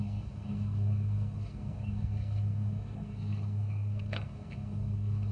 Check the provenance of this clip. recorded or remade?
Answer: remade